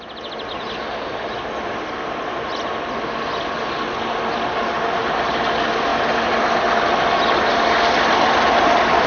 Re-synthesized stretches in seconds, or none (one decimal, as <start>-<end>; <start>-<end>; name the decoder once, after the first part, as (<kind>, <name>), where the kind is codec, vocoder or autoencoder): none